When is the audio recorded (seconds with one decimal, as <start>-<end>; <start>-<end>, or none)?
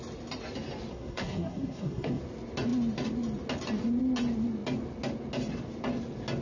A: 0.0-0.9; 2.2-6.4